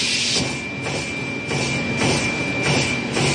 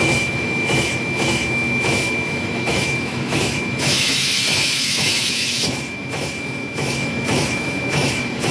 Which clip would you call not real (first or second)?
second